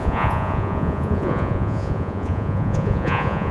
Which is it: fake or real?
fake